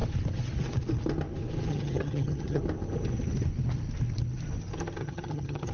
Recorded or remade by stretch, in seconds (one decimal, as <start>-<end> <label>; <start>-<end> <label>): 0.0-1.7 recorded; 1.7-2.6 remade; 2.6-5.0 recorded; 5.0-5.7 remade